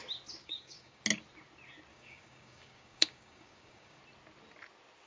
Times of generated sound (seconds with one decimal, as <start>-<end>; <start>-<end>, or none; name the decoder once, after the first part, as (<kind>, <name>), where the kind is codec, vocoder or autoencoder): 0.4-1.0 (codec, DAC); 1.9-4.0